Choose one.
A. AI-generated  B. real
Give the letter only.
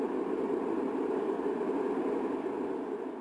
B